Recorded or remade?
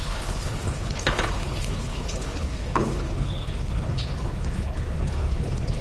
remade